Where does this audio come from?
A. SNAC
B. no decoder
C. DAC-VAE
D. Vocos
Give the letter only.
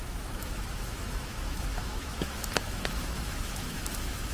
C